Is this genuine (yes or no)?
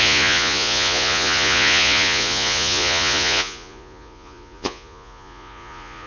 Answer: no